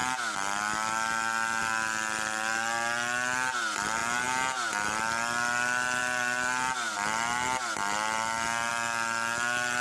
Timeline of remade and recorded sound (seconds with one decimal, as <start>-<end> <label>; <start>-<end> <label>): 0.0-9.8 recorded